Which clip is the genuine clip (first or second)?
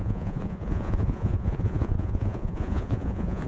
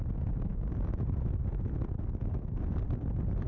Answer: second